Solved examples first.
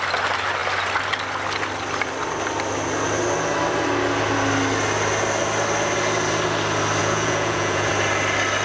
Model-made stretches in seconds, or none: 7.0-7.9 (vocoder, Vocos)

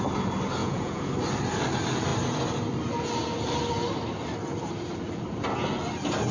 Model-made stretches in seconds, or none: 0.6-1.1 (vocoder, Vocos)

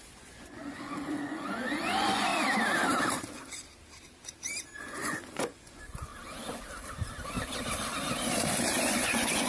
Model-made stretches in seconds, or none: 0.0-2.3 (vocoder, Vocos); 4.8-6.1; 8.7-9.5

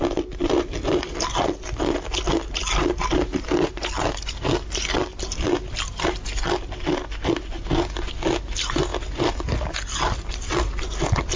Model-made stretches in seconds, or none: none

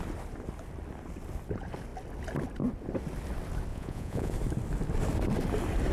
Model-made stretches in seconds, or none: 3.7-4.3 (vocoder, Vocos)

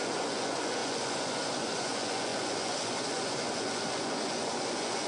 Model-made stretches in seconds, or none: 0.0-5.1 (vocoder, Vocos)